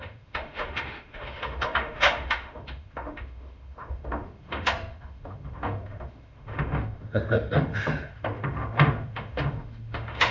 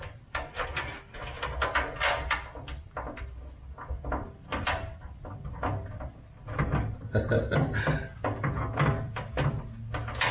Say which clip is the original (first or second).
second